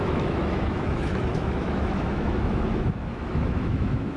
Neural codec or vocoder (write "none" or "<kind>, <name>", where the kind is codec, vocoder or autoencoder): autoencoder, DAC-VAE